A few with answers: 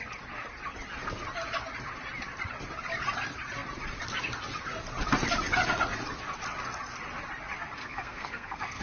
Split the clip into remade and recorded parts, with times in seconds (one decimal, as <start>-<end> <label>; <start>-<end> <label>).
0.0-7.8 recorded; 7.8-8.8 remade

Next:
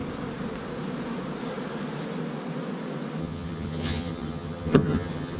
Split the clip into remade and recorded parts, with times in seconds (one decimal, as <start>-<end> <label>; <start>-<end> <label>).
0.0-3.2 recorded; 3.2-5.4 remade

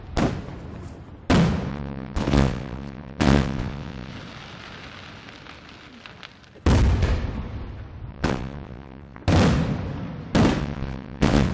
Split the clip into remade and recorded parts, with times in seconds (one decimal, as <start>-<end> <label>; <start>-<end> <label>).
0.0-1.7 recorded; 1.7-4.1 remade; 4.1-8.1 recorded; 8.1-9.2 remade; 9.2-10.6 recorded; 10.6-11.5 remade

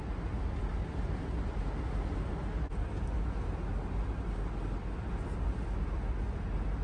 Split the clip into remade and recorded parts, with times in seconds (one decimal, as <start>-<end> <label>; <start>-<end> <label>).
0.0-6.8 recorded

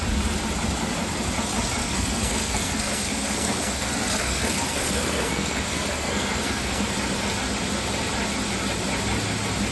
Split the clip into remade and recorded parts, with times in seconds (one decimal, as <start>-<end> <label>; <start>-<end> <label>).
0.0-1.8 recorded; 1.8-6.9 remade; 6.9-9.7 recorded